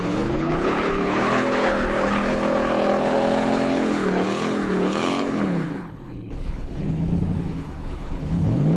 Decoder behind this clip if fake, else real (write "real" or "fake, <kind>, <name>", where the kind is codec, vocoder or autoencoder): fake, codec, HILCodec